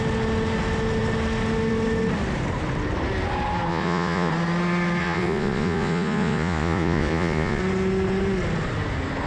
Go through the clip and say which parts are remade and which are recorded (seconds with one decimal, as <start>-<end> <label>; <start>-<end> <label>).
0.0-3.7 recorded; 3.7-4.3 remade; 4.3-5.0 recorded; 5.0-7.6 remade; 7.6-9.3 recorded